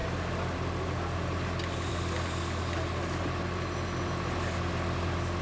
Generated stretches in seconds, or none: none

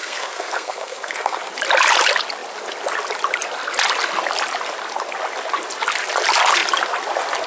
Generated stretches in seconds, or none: 0.0-1.4 (codec, SNAC)

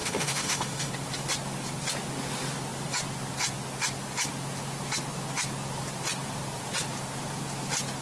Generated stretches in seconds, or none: 0.0-0.9 (autoencoder, DAC-VAE)

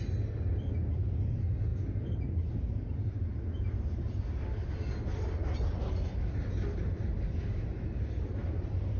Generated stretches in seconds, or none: none

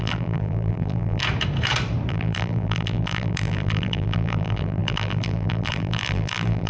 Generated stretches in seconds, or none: 0.0-1.2 (vocoder, BigVGAN v2); 2.1-6.7